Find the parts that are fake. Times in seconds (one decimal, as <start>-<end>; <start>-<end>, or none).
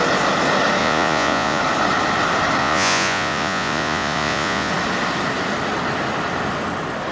0.8-1.6; 2.6-4.7